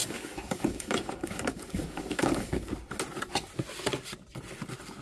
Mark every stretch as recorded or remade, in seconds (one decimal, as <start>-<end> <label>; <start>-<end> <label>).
0.0-2.7 remade; 2.7-5.0 recorded